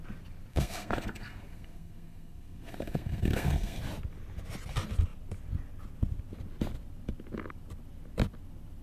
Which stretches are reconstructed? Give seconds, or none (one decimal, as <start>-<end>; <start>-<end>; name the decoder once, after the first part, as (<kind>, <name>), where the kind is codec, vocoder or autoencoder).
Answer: 0.5-3.8 (codec, SNAC)